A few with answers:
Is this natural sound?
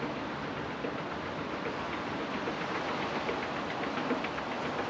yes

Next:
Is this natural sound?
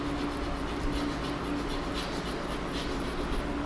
yes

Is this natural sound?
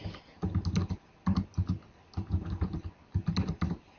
yes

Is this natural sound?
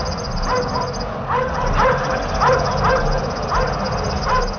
yes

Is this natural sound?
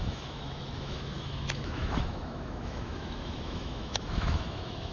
no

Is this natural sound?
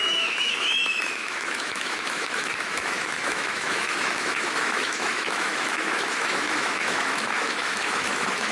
no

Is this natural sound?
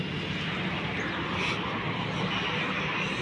yes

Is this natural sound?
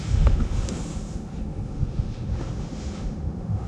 no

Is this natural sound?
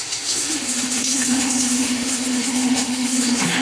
no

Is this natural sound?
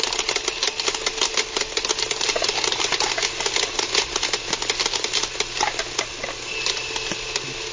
yes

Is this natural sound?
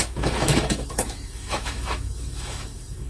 no